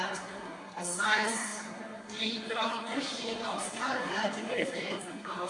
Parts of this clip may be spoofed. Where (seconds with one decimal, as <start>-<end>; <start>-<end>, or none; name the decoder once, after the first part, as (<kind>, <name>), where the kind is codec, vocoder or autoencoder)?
0.0-5.5 (codec, SNAC)

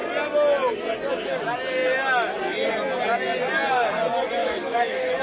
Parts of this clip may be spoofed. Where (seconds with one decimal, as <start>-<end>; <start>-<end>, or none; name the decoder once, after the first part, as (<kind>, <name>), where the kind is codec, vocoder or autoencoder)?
4.4-5.2 (autoencoder, DAC-VAE)

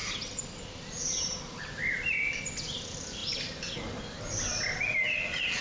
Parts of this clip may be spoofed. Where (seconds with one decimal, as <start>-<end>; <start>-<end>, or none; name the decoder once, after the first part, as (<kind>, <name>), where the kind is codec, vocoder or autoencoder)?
none

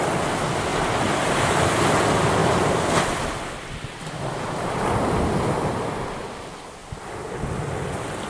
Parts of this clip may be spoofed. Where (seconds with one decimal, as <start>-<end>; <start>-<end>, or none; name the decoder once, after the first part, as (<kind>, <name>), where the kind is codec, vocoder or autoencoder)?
none

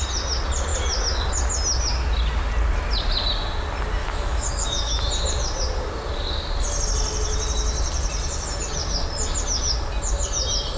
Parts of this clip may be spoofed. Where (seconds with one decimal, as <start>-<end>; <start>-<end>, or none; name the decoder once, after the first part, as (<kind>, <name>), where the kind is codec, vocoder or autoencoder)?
4.0-5.1 (autoencoder, DAC-VAE)

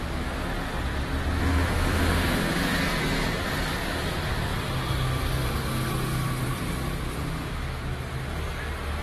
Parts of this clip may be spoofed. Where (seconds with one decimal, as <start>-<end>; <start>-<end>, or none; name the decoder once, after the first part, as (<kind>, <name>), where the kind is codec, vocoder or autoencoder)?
1.4-2.8 (autoencoder, DAC-VAE); 7.2-7.8

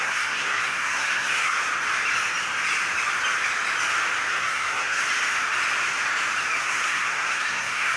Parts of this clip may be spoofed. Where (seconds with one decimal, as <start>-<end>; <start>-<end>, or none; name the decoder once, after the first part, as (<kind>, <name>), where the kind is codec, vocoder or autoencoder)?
0.0-1.6 (codec, SNAC); 4.3-5.0; 6.6-8.0

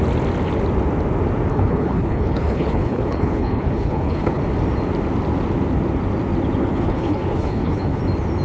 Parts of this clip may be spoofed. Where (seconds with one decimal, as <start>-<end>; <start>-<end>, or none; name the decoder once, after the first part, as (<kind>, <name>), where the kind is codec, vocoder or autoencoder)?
1.5-4.4 (codec, HILCodec); 6.6-8.0